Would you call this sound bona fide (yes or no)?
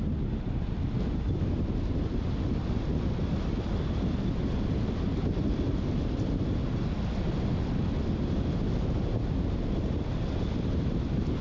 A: yes